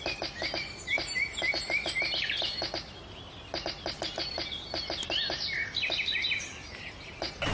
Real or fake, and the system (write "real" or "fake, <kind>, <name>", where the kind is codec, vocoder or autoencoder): real